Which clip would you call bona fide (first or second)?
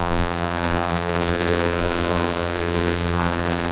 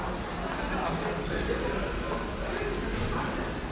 second